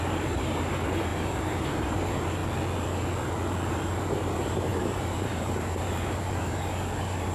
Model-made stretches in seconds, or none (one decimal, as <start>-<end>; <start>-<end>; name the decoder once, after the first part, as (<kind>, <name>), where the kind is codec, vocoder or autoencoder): 0.0-2.4 (vocoder, BigVGAN v2); 3.7-7.3